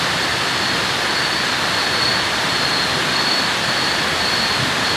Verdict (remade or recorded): recorded